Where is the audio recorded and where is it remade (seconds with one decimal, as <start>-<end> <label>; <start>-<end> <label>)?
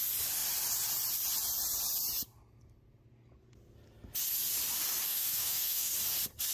0.0-5.1 recorded; 5.1-5.9 remade; 5.9-6.5 recorded